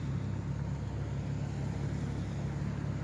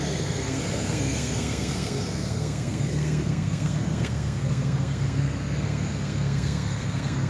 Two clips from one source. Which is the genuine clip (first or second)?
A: first